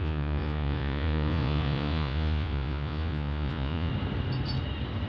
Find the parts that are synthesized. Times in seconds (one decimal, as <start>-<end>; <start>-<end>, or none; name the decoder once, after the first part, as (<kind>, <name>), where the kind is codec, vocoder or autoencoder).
0.0-3.9 (vocoder, Vocos)